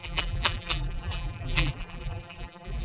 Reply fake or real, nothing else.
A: fake